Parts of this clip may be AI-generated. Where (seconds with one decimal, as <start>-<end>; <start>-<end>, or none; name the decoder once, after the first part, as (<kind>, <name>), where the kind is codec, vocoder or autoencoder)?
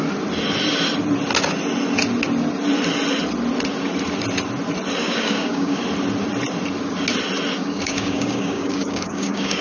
5.0-5.8 (codec, DAC); 7.6-9.6